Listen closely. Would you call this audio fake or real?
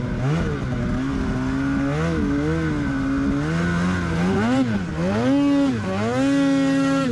real